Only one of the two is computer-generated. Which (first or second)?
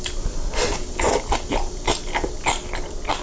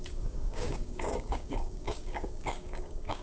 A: second